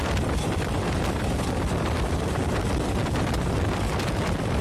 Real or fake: fake